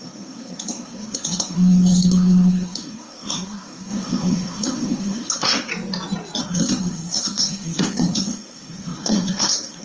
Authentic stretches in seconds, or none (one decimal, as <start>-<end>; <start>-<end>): 5.7-6.4